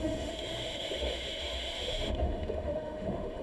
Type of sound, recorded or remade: remade